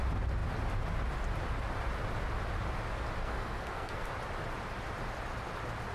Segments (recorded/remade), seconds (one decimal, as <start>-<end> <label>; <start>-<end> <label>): 0.0-3.2 recorded; 3.2-4.1 remade; 4.1-5.9 recorded